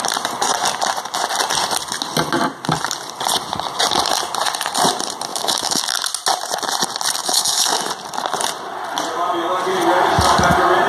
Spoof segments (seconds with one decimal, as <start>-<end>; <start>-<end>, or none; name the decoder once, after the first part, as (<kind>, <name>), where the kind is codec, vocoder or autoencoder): 5.3-5.8 (autoencoder, DAC-VAE); 7.2-7.9